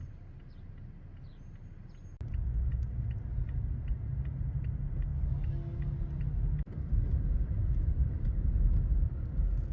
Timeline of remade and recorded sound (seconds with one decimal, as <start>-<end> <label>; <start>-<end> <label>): 0.0-9.7 recorded